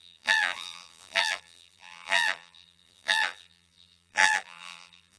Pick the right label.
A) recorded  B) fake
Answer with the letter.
B